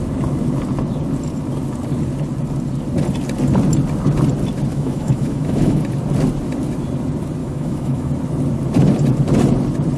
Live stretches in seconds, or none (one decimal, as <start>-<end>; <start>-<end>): 0.0-4.7; 5.8-7.4; 8.1-10.0